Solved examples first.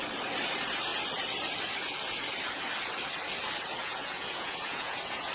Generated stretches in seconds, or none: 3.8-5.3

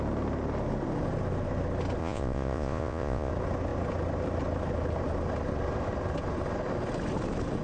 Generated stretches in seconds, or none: 2.0-3.3

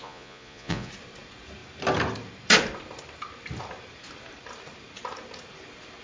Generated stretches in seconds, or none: 0.0-0.9

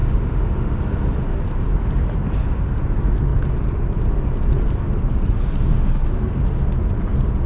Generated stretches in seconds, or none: 0.0-0.8; 5.7-6.4